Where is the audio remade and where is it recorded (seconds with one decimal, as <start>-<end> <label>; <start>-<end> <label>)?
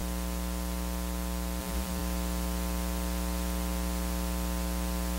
0.0-1.6 recorded; 1.6-2.0 remade; 2.0-5.2 recorded